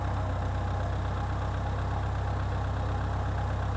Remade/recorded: recorded